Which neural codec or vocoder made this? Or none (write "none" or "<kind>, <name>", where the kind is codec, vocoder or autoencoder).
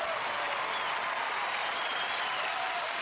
none